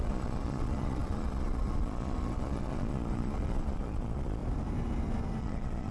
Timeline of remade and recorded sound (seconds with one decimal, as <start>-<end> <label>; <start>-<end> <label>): 0.0-4.4 remade; 4.4-5.4 recorded; 5.4-5.9 remade